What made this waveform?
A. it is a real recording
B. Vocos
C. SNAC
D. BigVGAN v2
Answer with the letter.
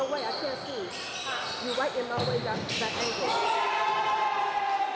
A